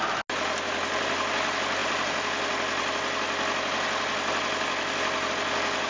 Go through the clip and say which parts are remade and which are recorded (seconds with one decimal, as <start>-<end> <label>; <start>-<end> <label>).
0.0-5.9 recorded